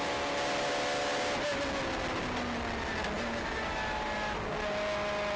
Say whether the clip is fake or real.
real